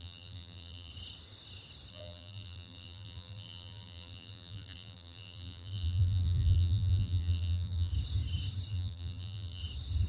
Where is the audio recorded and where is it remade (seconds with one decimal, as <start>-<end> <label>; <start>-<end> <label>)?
0.0-0.9 remade; 0.9-1.9 recorded; 1.9-7.9 remade; 7.9-8.7 recorded; 8.7-9.6 remade; 9.6-10.1 recorded